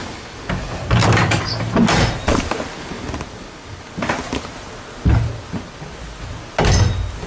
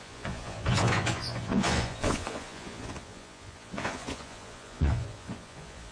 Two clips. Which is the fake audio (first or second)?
second